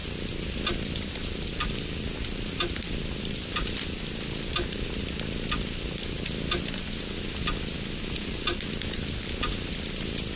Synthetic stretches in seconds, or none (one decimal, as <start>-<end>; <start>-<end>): none